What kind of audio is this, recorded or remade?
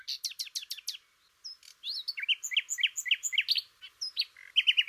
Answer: recorded